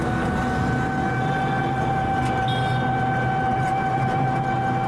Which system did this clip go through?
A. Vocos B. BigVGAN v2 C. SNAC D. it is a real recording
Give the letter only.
D